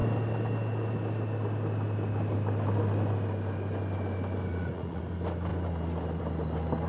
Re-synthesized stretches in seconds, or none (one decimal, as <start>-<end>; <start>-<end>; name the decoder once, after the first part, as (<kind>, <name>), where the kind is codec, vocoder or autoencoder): 4.5-5.0 (vocoder, Vocos)